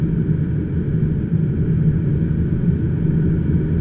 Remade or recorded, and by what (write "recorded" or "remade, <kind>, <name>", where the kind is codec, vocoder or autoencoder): recorded